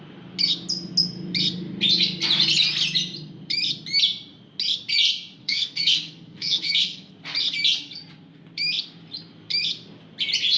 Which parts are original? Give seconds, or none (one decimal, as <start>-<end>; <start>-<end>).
0.0-5.4; 7.1-10.6